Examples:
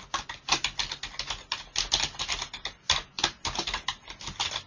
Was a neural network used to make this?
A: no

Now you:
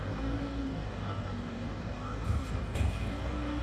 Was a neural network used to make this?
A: yes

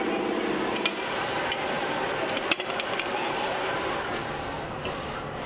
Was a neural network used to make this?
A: no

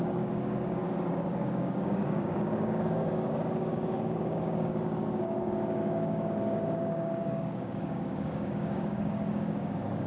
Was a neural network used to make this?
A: yes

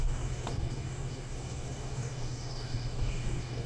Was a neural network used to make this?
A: yes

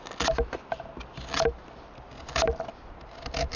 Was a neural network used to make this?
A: no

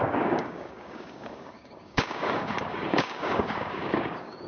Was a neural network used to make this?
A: yes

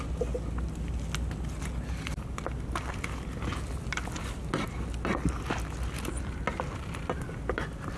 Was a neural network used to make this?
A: no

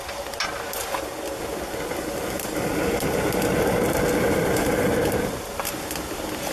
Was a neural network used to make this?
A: no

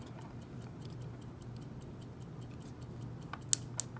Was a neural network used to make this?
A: no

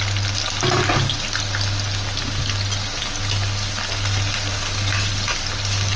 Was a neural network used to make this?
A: no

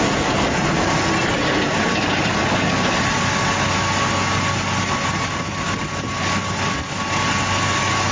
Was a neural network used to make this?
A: no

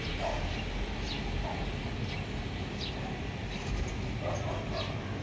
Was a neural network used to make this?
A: no